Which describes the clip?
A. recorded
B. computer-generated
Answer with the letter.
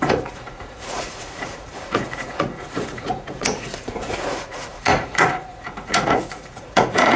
B